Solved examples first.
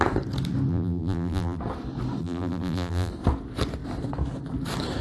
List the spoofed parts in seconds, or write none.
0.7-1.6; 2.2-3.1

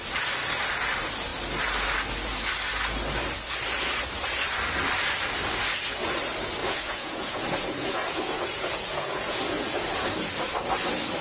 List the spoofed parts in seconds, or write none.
6.6-10.1

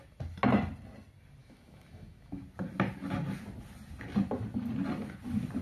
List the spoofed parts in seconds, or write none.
1.4-2.4

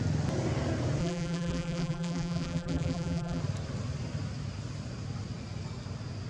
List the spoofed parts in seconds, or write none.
1.0-3.4

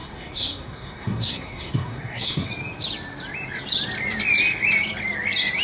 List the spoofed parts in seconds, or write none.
0.0-2.5